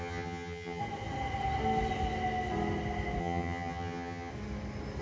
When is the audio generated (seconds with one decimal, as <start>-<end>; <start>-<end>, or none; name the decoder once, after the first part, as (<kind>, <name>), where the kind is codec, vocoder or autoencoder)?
0.0-0.8 (vocoder, HiFi-GAN); 3.2-4.3